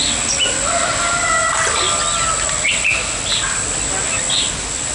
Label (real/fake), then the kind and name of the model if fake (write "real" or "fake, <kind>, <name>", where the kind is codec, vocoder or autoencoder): real